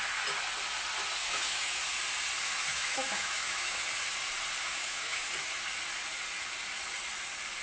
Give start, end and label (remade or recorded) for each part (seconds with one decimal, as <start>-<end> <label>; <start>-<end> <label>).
0.0-1.2 recorded; 1.2-1.8 remade; 1.8-2.7 recorded; 2.7-3.8 remade; 3.8-4.6 recorded; 4.6-5.3 remade; 5.3-7.6 recorded